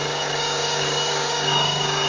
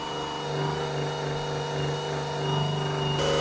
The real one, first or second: second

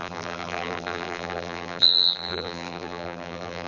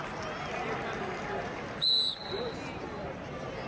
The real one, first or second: second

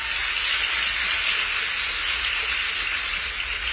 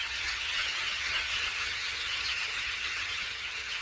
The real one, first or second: first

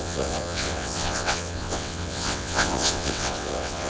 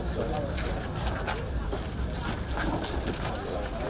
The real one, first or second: second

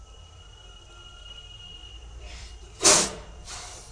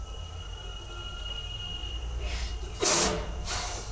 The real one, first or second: second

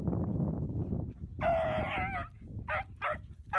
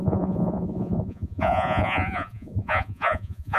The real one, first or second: first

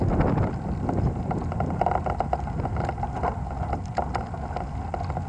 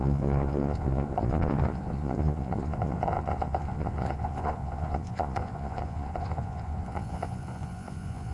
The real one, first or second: first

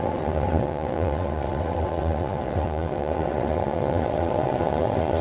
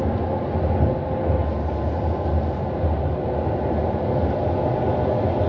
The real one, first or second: second